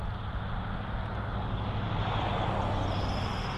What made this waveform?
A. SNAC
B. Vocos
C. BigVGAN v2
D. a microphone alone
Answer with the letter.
D